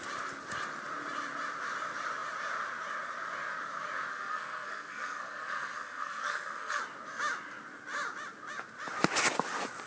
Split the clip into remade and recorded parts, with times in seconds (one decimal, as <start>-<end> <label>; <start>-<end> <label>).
0.0-4.1 recorded; 4.1-6.8 remade; 6.8-9.9 recorded